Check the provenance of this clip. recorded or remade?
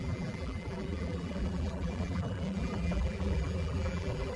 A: remade